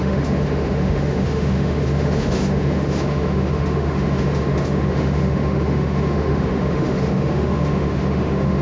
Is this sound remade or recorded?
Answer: remade